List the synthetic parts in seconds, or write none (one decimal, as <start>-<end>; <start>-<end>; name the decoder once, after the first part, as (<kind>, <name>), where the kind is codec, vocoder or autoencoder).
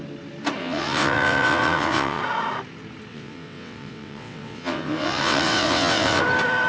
0.6-2.2 (vocoder, WaveNeXt); 3.1-6.2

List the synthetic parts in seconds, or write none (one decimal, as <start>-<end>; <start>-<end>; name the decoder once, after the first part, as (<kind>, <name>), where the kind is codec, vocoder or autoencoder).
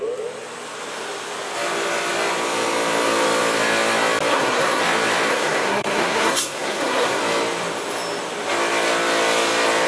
4.3-4.8 (codec, SNAC); 5.3-7.2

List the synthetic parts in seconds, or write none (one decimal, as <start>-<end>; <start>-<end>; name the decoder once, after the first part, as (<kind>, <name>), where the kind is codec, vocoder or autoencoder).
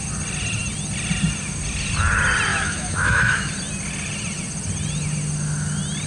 2.5-3.5 (autoencoder, DAC-VAE)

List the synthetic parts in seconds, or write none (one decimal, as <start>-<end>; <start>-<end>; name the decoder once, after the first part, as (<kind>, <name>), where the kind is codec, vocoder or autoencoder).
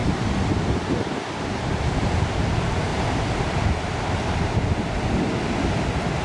2.3-2.9 (vocoder, BigVGAN v2)